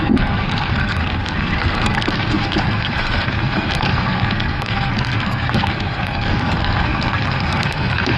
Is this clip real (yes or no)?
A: no